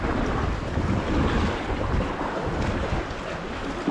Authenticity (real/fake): real